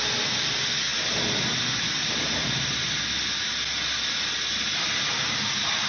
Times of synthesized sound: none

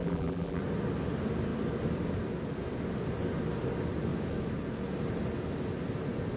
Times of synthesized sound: 0.0-0.6

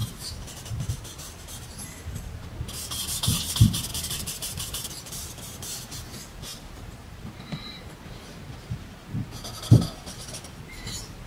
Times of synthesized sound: 0.0-2.6; 3.9-4.8; 6.5-8.0

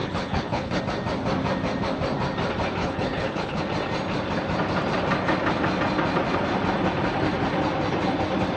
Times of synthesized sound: 0.0-0.8; 2.8-3.6

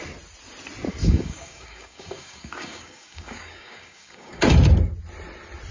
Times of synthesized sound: 1.0-4.4

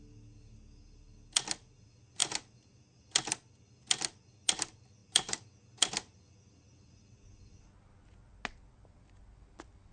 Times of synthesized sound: 2.2-2.8; 5.0-5.5

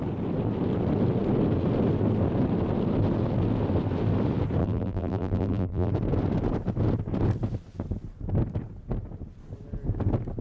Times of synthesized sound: 4.6-5.9

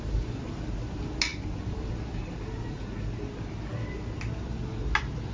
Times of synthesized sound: none